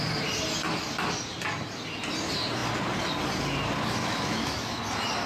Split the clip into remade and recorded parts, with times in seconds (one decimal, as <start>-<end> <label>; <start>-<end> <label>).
0.0-4.0 recorded; 4.0-4.8 remade; 4.8-5.3 recorded